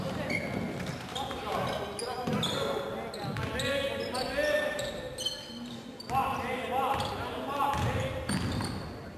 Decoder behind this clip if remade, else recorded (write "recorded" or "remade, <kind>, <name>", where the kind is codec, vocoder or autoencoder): recorded